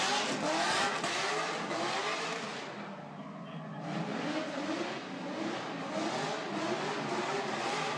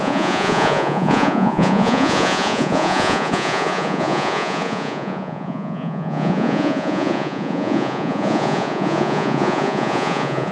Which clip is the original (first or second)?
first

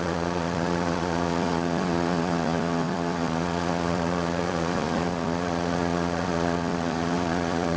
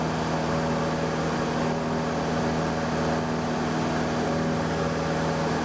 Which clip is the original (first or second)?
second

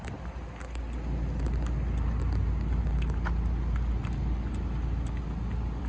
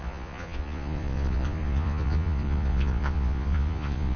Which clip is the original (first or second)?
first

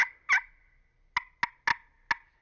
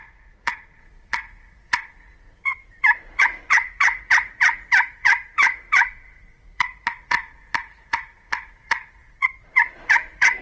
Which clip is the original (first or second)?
first